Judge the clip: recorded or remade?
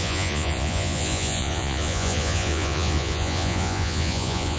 remade